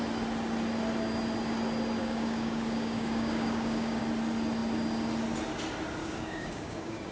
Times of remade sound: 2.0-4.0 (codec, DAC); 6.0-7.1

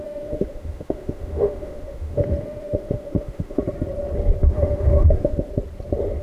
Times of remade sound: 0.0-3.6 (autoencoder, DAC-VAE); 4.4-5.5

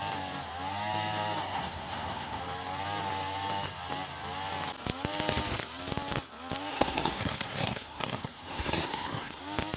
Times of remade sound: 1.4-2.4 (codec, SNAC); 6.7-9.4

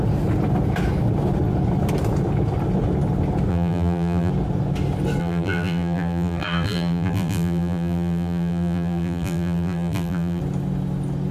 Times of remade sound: 3.5-4.3 (vocoder, BigVGAN v2); 5.2-10.4

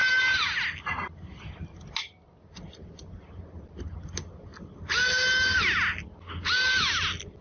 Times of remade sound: none

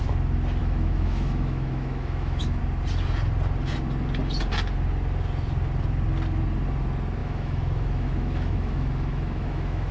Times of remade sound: 0.6-2.6 (autoencoder, DAC-VAE); 7.2-9.9

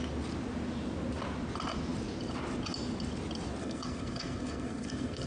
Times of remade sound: 3.6-5.3 (codec, SNAC)